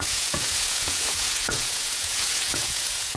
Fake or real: fake